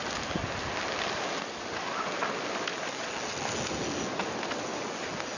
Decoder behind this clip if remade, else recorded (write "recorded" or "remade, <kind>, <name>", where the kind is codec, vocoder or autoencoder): recorded